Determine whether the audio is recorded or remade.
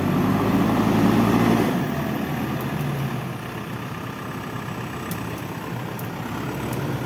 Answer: recorded